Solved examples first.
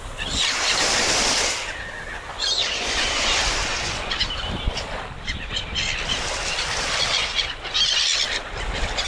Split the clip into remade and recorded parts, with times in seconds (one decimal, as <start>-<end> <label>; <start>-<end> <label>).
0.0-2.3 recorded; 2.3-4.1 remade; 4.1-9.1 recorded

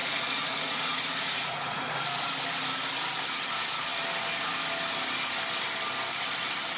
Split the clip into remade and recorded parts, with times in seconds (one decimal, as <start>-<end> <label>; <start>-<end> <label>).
0.0-1.9 remade; 1.9-6.8 recorded

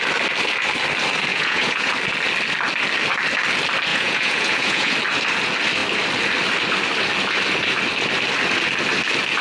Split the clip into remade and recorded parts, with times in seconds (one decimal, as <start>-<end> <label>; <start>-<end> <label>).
0.0-1.3 recorded; 1.3-1.9 remade; 1.9-3.9 recorded; 3.9-4.9 remade; 4.9-9.4 recorded

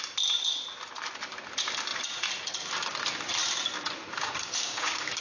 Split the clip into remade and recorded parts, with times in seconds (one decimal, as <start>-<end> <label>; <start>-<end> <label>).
0.0-4.1 recorded; 4.1-5.2 remade

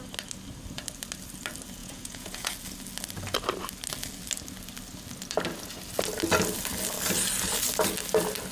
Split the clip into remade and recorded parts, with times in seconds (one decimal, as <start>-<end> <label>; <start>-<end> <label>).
0.0-1.8 recorded; 1.8-2.5 remade; 2.5-8.5 recorded

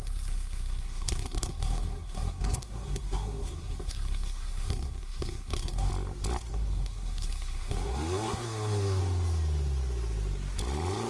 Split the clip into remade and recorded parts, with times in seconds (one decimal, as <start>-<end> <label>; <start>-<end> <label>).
0.0-5.9 remade; 5.9-6.5 recorded; 6.5-9.0 remade; 9.0-11.1 recorded